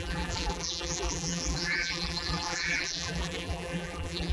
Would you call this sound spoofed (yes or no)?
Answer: yes